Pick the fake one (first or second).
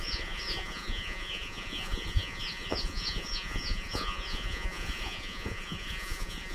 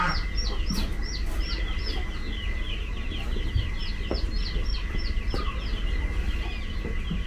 first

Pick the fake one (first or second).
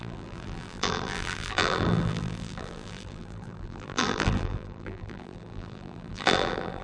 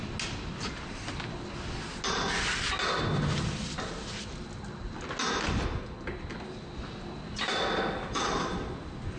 first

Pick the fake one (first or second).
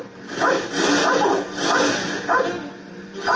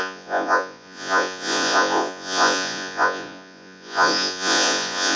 second